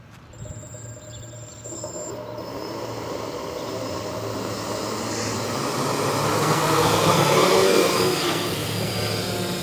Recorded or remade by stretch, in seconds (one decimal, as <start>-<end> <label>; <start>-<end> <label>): 0.0-6.3 recorded; 6.3-8.9 remade; 8.9-9.6 recorded